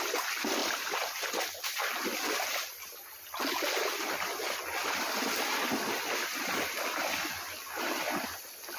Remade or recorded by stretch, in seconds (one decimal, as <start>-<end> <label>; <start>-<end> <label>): 0.0-8.8 recorded